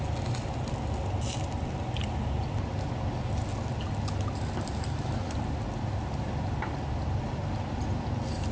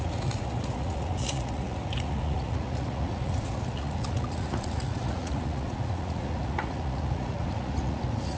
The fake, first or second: second